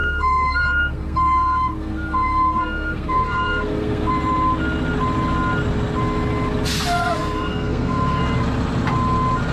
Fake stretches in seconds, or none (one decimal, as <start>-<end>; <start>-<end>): 0.0-4.1; 7.2-8.2